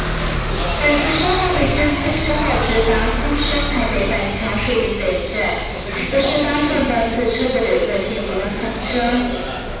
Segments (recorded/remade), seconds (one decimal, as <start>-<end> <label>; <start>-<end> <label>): 0.0-1.5 recorded; 1.5-2.3 remade; 2.3-9.8 recorded